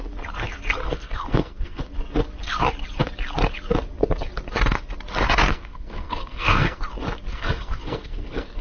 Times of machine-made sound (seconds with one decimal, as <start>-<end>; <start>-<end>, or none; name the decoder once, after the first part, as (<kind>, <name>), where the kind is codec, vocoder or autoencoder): 0.8-1.8 (codec, SNAC); 5.5-6.8; 7.3-8.6